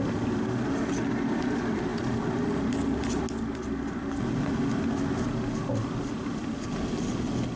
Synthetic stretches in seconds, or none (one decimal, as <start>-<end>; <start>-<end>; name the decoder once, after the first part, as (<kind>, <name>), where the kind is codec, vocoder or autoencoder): none